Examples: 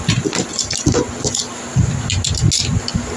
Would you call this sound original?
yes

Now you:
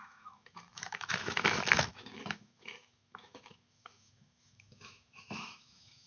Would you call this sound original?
no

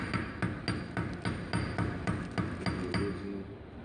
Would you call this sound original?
yes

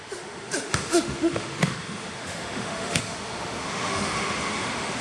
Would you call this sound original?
no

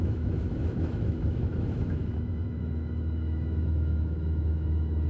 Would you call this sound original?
no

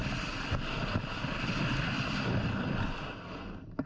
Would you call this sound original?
yes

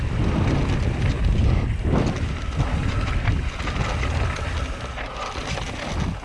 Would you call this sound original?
yes